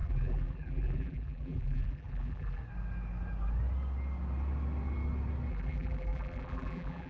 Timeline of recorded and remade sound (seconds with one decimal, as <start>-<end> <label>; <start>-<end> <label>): 0.0-2.6 remade; 2.6-5.5 recorded; 5.5-7.1 remade